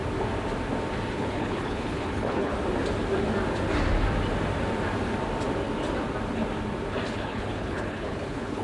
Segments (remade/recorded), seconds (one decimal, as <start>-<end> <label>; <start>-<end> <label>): 0.0-1.1 recorded; 1.1-2.5 remade; 2.5-7.1 recorded; 7.1-8.6 remade